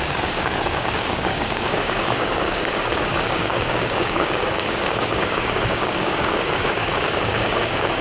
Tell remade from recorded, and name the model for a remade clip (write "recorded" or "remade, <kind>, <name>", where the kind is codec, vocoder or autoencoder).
remade, codec, DAC